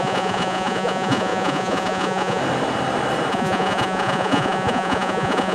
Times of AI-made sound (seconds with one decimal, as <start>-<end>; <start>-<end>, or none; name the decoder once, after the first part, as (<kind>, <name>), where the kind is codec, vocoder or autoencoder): 0.0-2.4 (vocoder, Vocos); 3.3-5.5